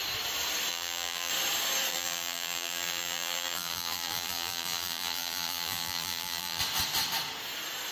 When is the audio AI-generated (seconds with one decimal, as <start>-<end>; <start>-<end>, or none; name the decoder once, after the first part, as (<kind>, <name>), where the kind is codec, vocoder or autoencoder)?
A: 0.7-1.3 (vocoder, BigVGAN v2); 1.9-6.6

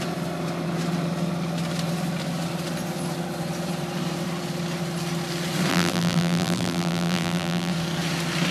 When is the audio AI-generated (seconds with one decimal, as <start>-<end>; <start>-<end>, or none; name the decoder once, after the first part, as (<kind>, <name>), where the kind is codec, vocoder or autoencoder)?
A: 5.7-7.7 (vocoder, BigVGAN v2)

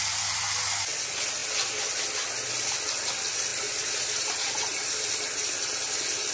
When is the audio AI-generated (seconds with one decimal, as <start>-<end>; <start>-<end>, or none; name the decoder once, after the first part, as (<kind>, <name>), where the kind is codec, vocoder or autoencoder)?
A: 3.5-5.1 (vocoder, BigVGAN v2)

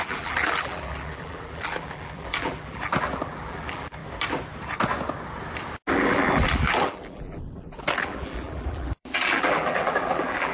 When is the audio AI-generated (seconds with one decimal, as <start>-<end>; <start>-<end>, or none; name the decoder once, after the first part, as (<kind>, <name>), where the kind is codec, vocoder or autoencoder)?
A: 0.0-4.0 (vocoder, BigVGAN v2); 5.9-10.5

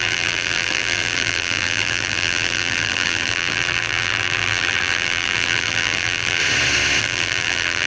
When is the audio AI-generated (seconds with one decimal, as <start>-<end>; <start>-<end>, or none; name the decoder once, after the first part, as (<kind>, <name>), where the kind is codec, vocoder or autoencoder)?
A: 0.0-6.4 (vocoder, BigVGAN v2); 7.0-7.9

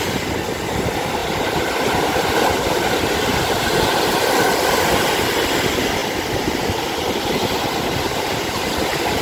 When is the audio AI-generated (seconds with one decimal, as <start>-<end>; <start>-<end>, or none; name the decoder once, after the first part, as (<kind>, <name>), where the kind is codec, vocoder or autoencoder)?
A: 1.2-2.3 (vocoder, BigVGAN v2); 6.0-6.8

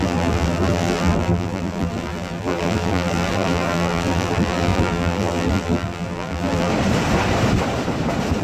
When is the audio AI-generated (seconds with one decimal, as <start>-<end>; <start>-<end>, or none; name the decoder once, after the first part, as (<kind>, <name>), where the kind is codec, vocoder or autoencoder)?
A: 0.0-6.7 (vocoder, BigVGAN v2)

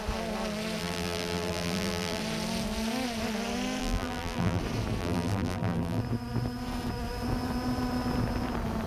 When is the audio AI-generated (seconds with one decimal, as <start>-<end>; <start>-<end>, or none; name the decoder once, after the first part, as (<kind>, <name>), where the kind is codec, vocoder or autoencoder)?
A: 0.8-2.2 (vocoder, BigVGAN v2); 3.8-4.6; 5.0-6.0